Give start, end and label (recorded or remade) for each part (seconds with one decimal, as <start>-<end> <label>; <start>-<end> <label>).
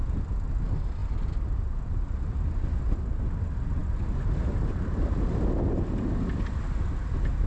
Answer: 0.0-7.5 recorded